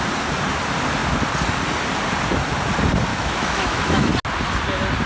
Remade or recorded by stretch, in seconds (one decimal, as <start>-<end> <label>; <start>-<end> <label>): 0.0-3.1 recorded; 3.1-4.1 remade; 4.1-5.1 recorded